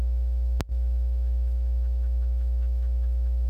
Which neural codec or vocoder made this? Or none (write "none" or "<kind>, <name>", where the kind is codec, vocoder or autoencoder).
autoencoder, DAC-VAE